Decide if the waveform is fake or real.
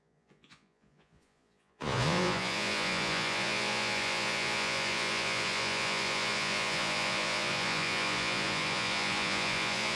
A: fake